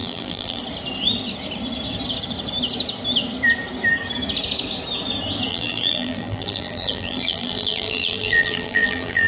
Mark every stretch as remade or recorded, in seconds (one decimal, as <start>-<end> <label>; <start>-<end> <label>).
0.0-0.6 remade; 0.6-5.5 recorded; 5.5-9.3 remade